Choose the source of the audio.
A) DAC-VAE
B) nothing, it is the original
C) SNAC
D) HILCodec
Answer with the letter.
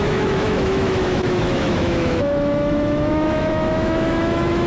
A